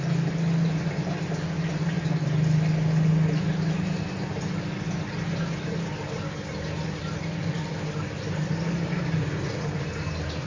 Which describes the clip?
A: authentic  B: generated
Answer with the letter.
A